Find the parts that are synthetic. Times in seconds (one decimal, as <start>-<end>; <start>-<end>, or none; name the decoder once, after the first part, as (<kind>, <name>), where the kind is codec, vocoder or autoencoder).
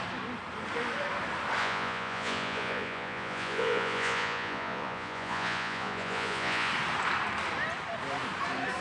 1.6-6.7 (vocoder, Vocos)